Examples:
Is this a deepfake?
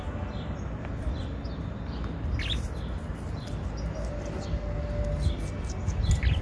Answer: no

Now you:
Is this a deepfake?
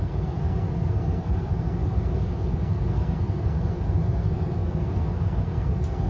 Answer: yes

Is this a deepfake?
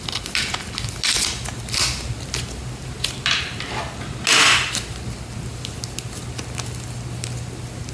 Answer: no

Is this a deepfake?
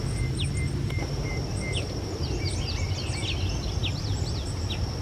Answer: no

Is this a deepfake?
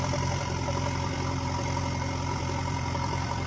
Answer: yes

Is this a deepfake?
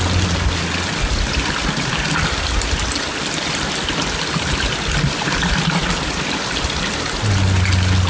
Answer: no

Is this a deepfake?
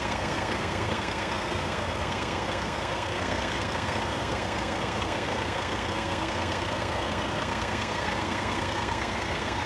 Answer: yes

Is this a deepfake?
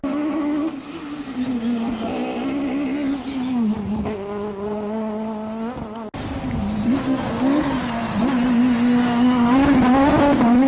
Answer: no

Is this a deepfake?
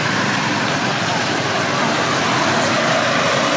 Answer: no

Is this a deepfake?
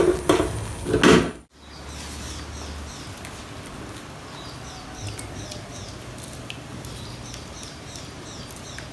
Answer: no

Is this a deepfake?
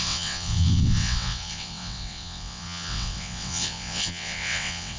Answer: yes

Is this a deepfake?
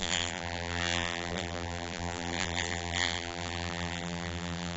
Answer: yes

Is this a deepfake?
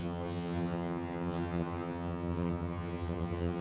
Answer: yes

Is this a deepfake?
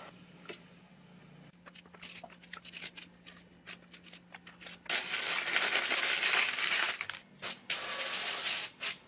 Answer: no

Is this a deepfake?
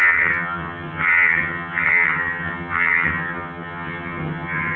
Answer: yes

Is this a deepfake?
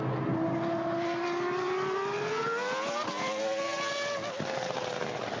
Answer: no